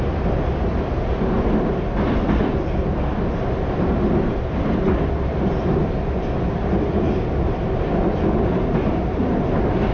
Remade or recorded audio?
recorded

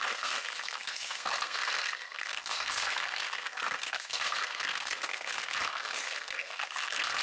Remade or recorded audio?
remade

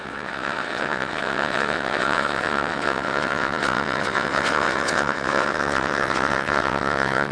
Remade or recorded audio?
remade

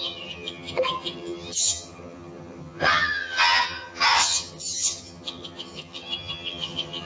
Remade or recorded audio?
remade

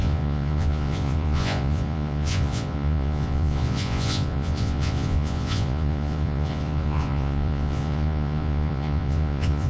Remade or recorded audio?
remade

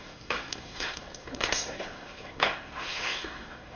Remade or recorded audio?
remade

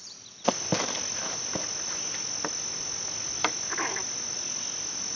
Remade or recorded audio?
recorded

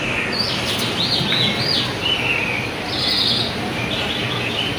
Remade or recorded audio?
recorded